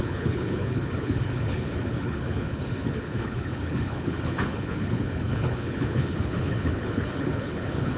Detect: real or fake fake